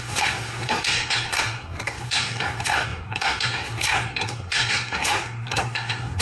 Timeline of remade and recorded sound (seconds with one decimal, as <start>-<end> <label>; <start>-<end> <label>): 0.0-6.2 remade